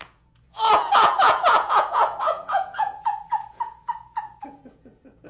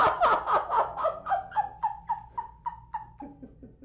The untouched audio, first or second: second